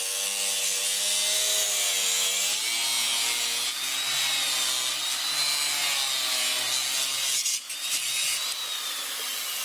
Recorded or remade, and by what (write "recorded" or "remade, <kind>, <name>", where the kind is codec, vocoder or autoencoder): recorded